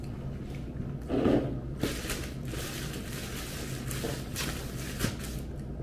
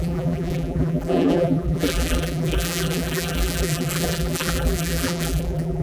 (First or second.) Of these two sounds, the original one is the first